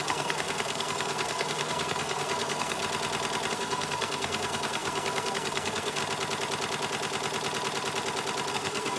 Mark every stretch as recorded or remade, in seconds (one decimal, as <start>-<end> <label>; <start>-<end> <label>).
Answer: 0.0-2.8 remade; 2.8-3.5 recorded; 3.5-6.0 remade; 6.0-8.5 recorded; 8.5-9.0 remade